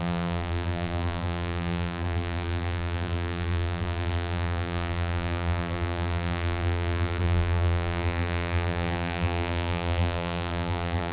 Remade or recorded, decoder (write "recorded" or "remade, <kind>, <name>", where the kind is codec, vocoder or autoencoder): remade, vocoder, BigVGAN v2